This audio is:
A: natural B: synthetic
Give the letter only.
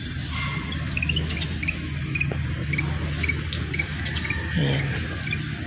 A